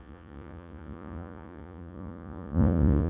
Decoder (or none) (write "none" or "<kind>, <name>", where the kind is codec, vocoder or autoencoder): vocoder, Vocos